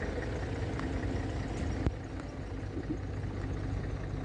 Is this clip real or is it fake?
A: real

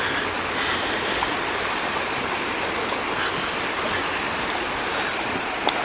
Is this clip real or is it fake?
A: real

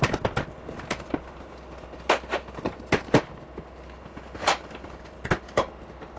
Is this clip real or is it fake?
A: real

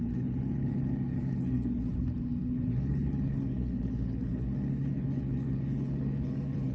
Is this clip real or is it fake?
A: fake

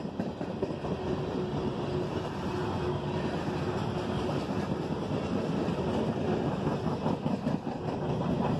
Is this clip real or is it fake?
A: real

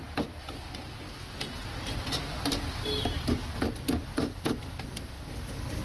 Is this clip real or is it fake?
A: real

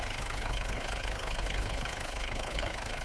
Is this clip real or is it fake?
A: fake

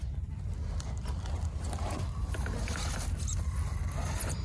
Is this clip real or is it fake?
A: real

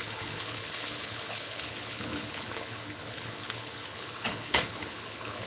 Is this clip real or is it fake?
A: fake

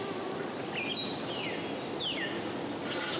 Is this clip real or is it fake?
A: real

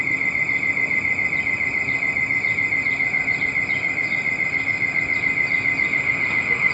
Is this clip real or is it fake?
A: real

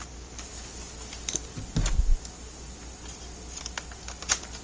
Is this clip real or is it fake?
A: real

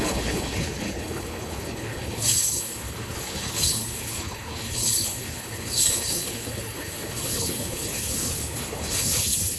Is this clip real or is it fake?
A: fake